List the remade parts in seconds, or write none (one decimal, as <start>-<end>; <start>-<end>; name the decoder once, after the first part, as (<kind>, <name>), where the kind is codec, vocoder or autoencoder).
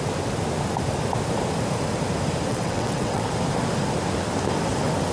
2.5-3.3 (vocoder, WaveNeXt)